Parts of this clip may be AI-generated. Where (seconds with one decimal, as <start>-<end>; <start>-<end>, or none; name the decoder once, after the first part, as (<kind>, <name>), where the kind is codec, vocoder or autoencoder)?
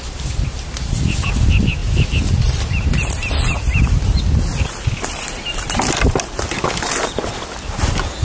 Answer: none